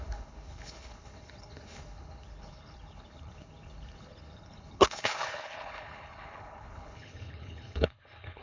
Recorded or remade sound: remade